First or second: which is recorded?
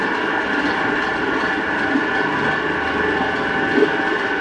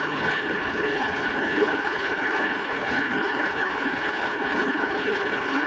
first